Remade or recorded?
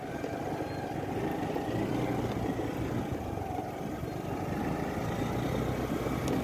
recorded